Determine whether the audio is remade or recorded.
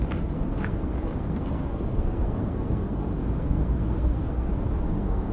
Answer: remade